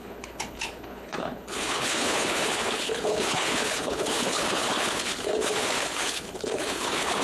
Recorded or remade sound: remade